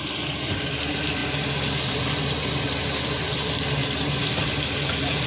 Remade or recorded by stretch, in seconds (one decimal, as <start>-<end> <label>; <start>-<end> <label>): 0.0-5.3 recorded